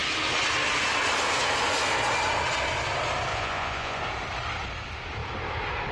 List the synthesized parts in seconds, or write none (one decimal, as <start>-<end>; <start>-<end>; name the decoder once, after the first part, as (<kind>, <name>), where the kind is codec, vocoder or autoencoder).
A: 3.3-4.0 (vocoder, Vocos)